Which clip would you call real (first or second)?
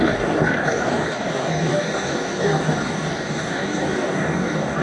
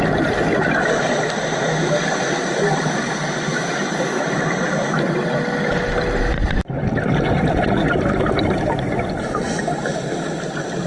second